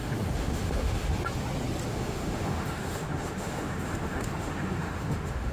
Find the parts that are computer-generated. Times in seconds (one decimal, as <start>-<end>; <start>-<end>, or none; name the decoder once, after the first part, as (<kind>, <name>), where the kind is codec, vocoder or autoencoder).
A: 0.0-1.1 (autoencoder, DAC-VAE); 1.9-5.5